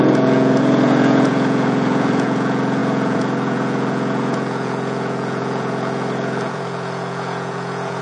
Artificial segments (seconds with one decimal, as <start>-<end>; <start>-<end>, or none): 0.0-8.0